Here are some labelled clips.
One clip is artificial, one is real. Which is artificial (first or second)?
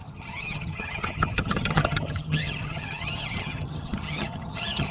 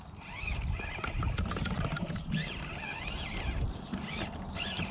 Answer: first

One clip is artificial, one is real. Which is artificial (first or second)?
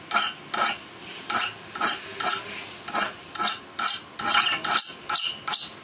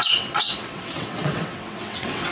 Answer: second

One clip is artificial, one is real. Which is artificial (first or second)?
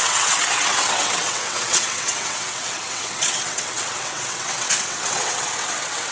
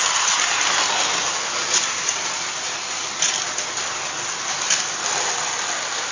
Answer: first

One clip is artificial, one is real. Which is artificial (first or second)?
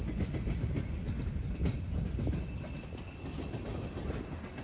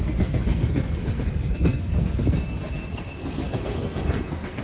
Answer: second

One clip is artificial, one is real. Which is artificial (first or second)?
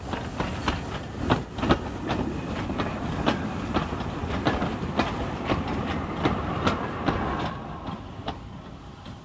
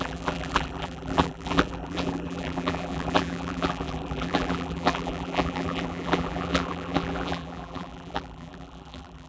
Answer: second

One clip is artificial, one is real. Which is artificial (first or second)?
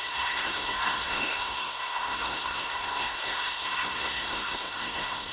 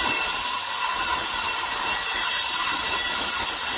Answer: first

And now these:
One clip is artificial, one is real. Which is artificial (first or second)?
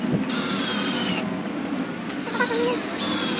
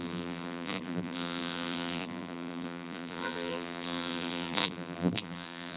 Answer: second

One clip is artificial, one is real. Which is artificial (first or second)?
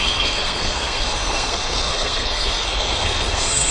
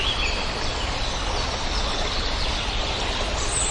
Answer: first